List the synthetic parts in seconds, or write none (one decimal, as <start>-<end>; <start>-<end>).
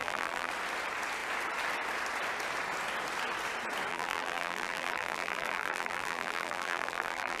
0.0-0.5; 3.9-7.4